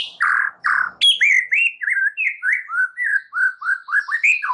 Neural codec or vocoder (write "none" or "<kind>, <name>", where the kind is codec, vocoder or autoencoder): none